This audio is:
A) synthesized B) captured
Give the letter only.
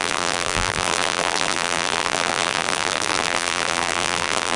A